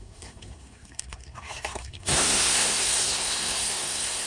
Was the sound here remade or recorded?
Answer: remade